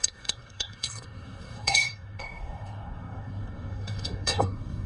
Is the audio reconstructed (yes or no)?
yes